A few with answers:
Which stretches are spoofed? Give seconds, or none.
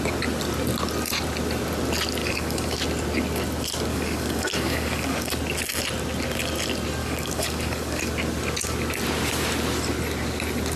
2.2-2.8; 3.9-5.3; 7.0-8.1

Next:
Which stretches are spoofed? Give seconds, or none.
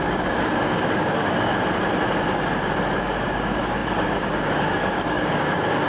0.0-1.5; 3.0-5.9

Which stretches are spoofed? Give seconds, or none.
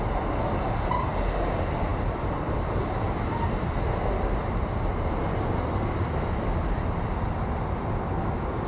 none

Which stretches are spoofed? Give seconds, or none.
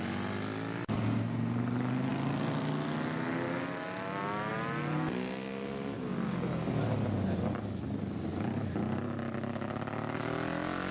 none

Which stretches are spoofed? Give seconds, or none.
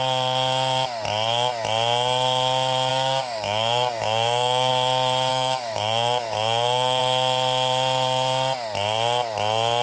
2.9-4.7; 5.3-7.0